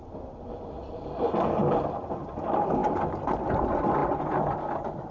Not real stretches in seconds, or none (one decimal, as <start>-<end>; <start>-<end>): none

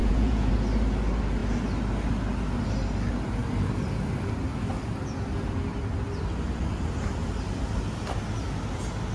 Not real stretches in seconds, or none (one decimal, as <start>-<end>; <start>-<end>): 0.0-0.5

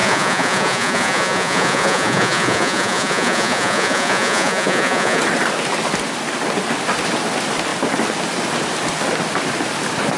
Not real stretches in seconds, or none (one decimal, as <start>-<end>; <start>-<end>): 0.0-5.2

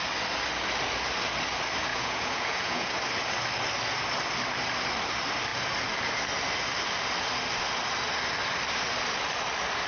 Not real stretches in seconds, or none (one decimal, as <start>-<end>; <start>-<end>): 1.9-2.9

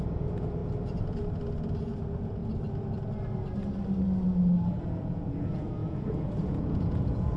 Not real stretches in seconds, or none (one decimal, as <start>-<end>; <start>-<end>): 0.0-0.6; 1.8-2.4; 4.8-7.4

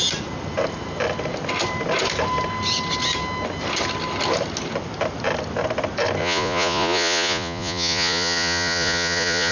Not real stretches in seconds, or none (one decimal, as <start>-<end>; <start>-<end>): 6.2-9.5